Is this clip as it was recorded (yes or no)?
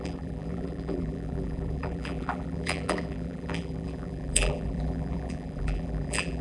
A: no